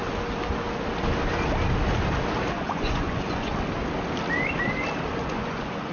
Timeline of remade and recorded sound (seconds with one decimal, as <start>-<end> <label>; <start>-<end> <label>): 0.0-2.5 recorded; 2.5-3.5 remade; 3.5-5.2 recorded; 5.2-5.9 remade

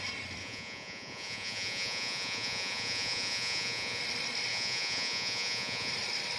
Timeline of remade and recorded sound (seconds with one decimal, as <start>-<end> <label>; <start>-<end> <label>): 0.0-0.4 recorded; 0.4-4.0 remade; 4.0-4.5 recorded; 4.5-5.9 remade; 5.9-6.4 recorded

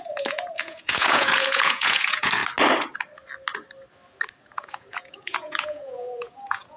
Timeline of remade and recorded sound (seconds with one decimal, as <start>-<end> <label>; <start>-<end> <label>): 0.0-2.4 remade; 2.4-4.4 recorded; 4.4-6.8 remade

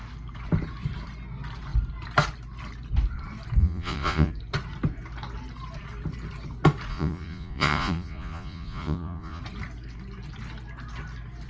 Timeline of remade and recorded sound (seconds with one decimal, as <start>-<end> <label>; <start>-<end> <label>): 0.0-3.6 recorded; 3.6-4.3 remade; 4.3-6.9 recorded; 6.9-9.4 remade; 9.4-11.5 recorded

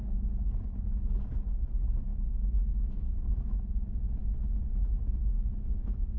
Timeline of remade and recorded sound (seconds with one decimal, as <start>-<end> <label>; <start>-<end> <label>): 0.0-4.2 remade; 4.2-4.7 recorded; 4.7-6.2 remade